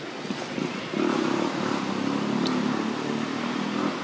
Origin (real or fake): real